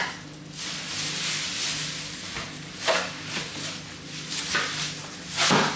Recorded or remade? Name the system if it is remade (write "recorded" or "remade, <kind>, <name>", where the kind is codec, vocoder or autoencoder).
recorded